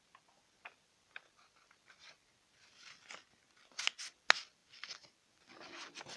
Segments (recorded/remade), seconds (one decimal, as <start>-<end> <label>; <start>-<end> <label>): 0.0-6.2 recorded